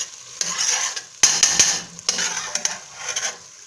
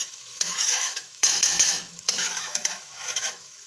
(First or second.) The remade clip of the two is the second